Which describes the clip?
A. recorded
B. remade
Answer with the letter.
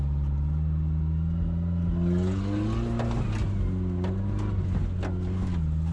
A